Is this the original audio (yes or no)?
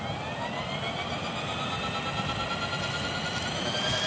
yes